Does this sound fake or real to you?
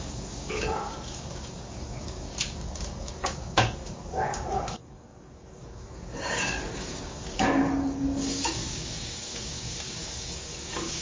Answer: fake